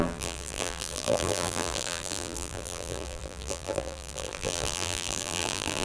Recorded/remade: remade